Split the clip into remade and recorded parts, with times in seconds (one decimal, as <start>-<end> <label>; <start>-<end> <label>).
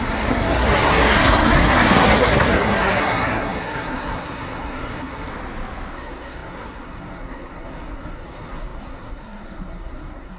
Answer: 0.0-5.3 remade; 5.3-5.9 recorded; 5.9-10.4 remade